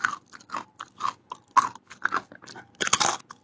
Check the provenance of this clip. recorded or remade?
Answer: recorded